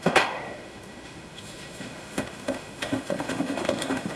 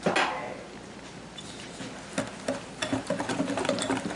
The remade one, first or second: first